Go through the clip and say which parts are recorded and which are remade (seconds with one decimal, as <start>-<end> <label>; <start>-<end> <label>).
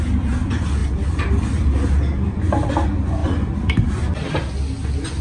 0.0-0.8 recorded; 0.8-2.7 remade; 2.7-3.2 recorded; 3.2-3.9 remade; 3.9-5.2 recorded